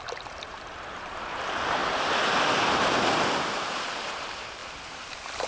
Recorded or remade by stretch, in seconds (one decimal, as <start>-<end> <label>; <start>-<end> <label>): 0.0-1.8 remade; 1.8-3.4 recorded; 3.4-5.5 remade